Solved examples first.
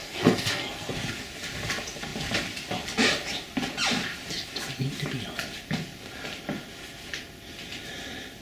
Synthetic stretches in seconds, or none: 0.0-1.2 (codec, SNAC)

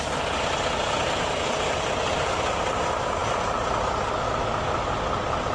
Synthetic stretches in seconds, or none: none

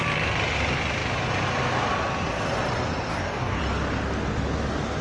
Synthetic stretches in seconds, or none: 3.1-3.6 (codec, DAC)

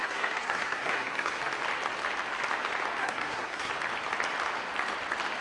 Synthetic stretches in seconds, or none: 0.0-1.4 (codec, SNAC); 3.0-3.7

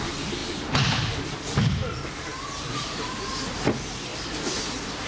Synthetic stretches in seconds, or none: 0.4-1.5 (vocoder, BigVGAN v2); 2.3-3.3; 4.1-4.6

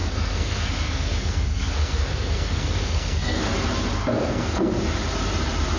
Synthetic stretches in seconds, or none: 0.0-3.5 (codec, SNAC); 4.0-4.7